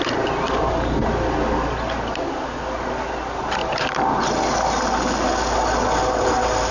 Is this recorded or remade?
recorded